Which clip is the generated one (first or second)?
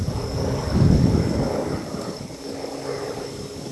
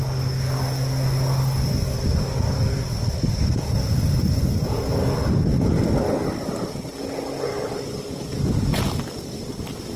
first